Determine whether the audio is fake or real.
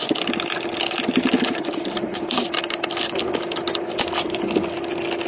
real